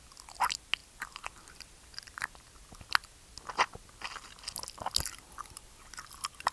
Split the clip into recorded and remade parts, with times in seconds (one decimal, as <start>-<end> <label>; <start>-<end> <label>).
0.0-6.5 recorded